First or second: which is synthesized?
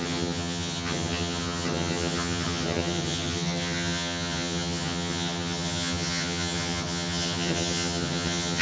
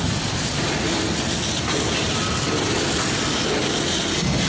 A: first